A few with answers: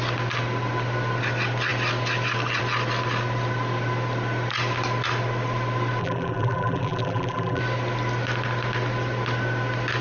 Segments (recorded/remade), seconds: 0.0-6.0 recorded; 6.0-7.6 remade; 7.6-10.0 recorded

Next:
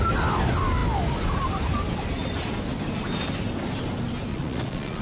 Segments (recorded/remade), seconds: 0.0-4.3 recorded; 4.3-5.0 remade

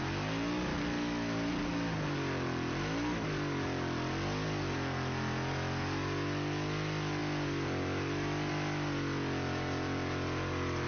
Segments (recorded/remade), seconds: 0.0-10.9 recorded

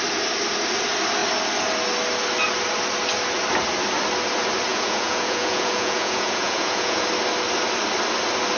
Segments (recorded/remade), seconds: 0.0-4.7 recorded; 4.7-7.0 remade; 7.0-8.6 recorded

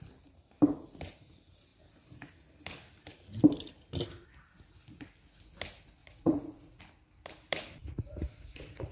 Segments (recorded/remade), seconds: 0.0-6.0 recorded; 6.0-6.8 remade; 6.8-7.8 recorded; 7.8-8.9 remade